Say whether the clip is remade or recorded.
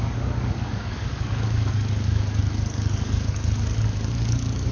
remade